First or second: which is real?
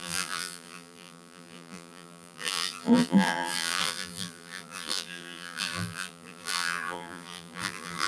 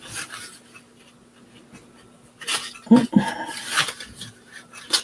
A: second